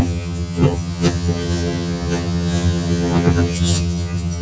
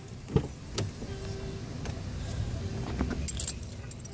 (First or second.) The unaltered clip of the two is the second